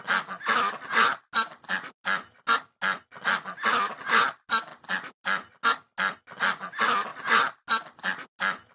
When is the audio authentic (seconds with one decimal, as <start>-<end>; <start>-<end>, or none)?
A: 0.0-8.7